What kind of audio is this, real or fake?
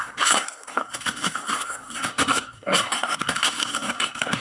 fake